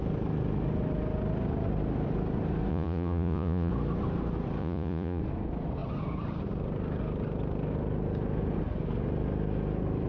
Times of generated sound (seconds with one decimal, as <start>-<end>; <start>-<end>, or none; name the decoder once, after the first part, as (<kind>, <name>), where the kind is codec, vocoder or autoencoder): 2.7-3.7 (vocoder, Vocos); 4.6-5.2